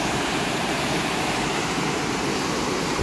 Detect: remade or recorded remade